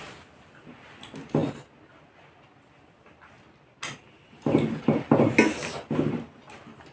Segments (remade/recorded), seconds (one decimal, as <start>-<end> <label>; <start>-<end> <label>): 0.0-6.9 recorded